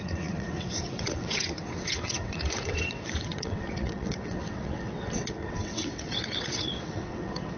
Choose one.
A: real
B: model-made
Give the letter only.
B